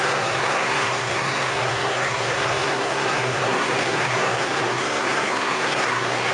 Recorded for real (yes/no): no